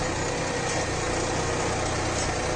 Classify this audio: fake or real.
real